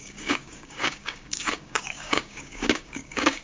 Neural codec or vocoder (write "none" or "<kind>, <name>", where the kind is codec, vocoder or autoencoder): codec, DAC